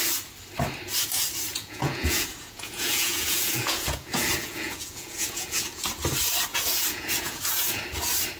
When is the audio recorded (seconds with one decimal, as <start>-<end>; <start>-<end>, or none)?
0.0-1.5; 5.9-6.5; 7.8-8.4